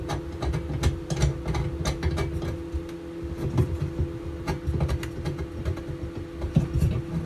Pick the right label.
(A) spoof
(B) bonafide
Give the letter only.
B